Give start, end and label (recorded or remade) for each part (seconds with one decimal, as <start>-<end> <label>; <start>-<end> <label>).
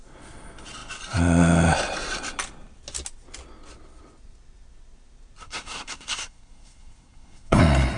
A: 0.0-5.4 recorded; 5.4-7.6 remade; 7.6-8.0 recorded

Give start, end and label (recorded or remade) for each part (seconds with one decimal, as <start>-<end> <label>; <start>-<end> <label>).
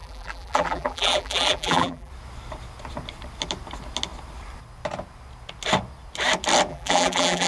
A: 0.0-2.1 remade; 2.1-6.7 recorded; 6.7-7.5 remade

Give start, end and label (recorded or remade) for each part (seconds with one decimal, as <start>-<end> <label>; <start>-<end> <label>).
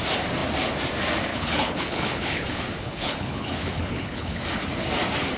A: 0.0-1.3 recorded; 1.3-4.4 remade; 4.4-5.4 recorded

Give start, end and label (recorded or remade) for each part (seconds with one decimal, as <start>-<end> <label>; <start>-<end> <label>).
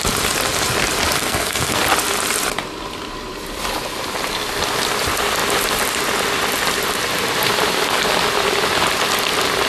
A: 0.0-1.2 recorded; 1.2-1.8 remade; 1.8-9.7 recorded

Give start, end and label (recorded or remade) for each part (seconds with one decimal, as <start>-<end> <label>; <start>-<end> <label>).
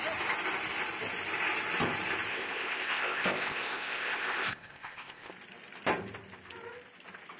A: 0.0-2.3 recorded; 2.3-5.3 remade; 5.3-7.4 recorded